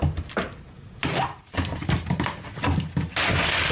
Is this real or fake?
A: real